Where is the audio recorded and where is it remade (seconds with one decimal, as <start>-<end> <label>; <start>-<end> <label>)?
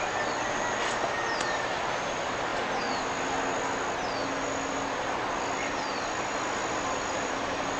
0.0-7.8 recorded